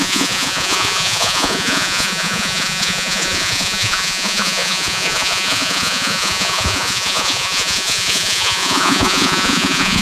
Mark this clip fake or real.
fake